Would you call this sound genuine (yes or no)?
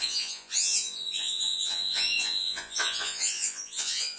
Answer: no